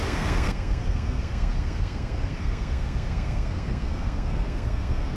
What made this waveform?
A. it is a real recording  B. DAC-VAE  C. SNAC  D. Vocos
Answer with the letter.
C